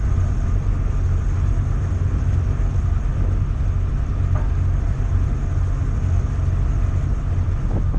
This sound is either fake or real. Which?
real